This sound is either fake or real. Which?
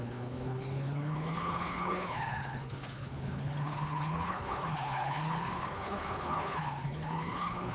fake